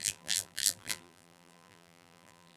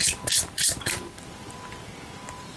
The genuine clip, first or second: second